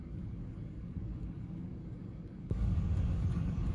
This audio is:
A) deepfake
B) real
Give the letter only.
A